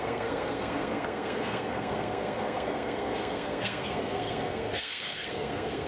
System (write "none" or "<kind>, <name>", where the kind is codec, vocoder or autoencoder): codec, SNAC